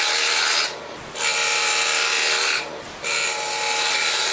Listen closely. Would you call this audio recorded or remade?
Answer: recorded